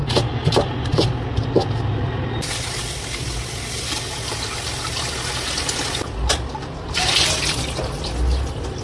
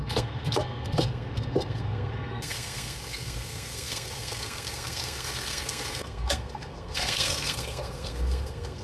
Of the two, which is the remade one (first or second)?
second